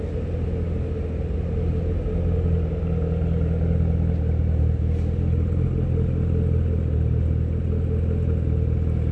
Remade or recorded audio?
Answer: recorded